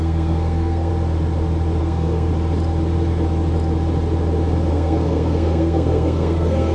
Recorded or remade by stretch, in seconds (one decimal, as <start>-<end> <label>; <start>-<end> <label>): 0.0-0.9 remade; 0.9-1.8 recorded; 1.8-2.3 remade; 2.3-4.7 recorded; 4.7-6.7 remade